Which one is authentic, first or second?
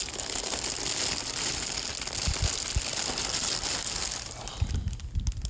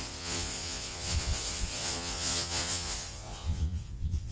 first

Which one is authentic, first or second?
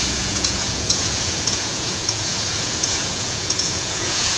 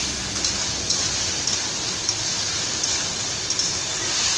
second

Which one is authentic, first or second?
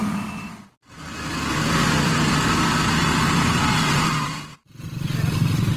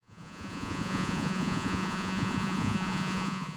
first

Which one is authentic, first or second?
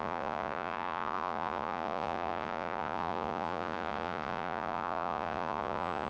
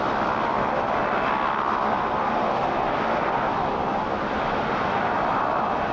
second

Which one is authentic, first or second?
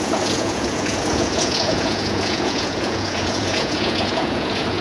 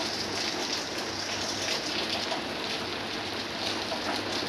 second